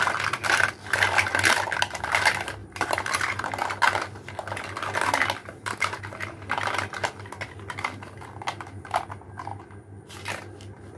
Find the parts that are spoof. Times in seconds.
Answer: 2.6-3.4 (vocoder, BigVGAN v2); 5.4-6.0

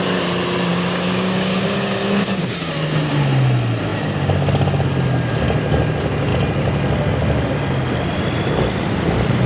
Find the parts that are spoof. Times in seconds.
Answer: 0.7-2.7 (codec, DAC)

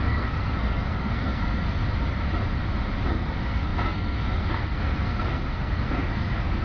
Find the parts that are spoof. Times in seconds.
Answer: 0.0-1.8 (codec, SNAC); 3.1-6.6

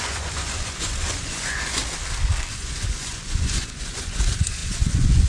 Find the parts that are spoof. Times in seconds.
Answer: 0.0-1.8 (vocoder, Vocos); 2.5-5.3

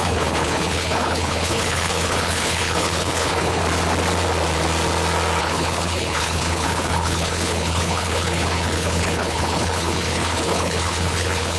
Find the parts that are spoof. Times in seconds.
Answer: 0.0-3.6 (codec, HILCodec); 5.4-11.6